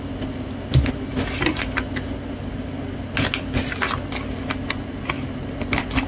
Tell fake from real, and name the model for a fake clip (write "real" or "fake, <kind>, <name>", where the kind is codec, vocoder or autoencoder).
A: real